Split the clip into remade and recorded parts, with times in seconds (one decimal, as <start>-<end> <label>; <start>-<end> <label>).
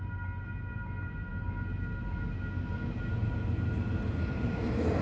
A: 0.0-5.0 recorded